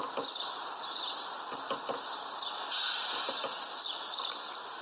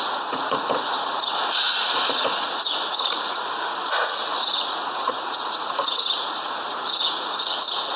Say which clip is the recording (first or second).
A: first